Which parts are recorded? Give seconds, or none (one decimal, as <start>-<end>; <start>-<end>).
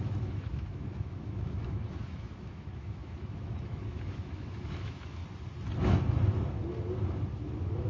5.2-7.4